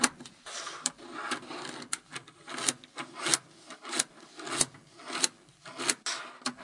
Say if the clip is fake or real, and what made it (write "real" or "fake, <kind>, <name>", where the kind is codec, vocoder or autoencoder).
real